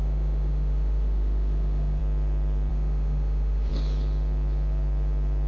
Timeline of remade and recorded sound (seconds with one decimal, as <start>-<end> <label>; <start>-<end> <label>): 0.0-2.0 remade; 2.0-2.7 recorded; 2.7-3.7 remade; 3.7-5.5 recorded